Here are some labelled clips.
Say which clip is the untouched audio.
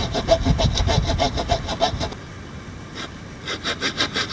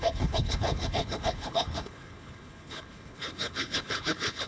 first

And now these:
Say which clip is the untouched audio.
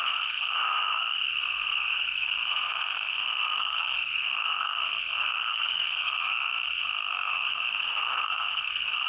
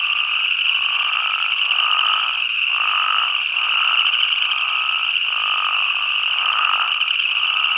second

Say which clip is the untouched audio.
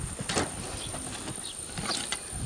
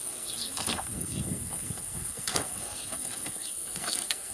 first